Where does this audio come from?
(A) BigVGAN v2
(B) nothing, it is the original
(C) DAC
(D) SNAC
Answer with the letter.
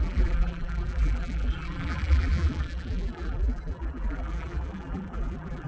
A